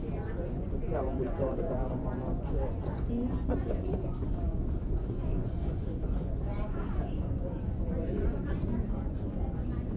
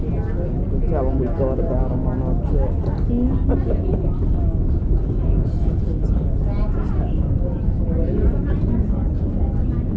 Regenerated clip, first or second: first